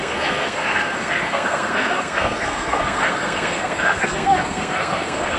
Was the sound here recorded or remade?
remade